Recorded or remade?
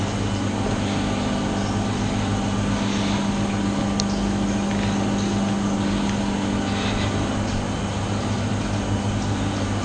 recorded